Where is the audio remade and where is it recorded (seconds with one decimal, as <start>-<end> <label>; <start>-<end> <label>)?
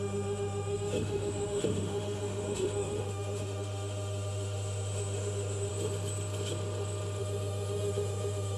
0.0-5.7 remade; 5.7-7.2 recorded; 7.2-8.6 remade